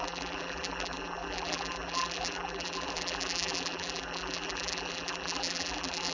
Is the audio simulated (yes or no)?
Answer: yes